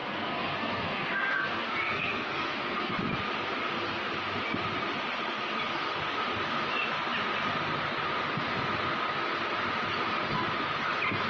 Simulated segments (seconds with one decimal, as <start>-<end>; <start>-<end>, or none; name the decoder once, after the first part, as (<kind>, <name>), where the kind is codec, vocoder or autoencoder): 0.0-2.9 (codec, SNAC)